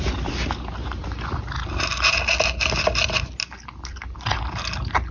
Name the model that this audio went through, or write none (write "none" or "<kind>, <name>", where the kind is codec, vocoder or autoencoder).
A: none